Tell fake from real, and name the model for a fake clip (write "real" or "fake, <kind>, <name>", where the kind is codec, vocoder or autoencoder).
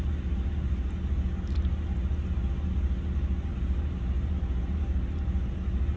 real